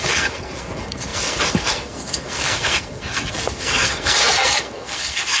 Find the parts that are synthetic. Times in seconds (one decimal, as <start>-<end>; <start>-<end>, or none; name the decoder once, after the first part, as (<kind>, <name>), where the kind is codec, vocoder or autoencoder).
0.0-5.4 (codec, SNAC)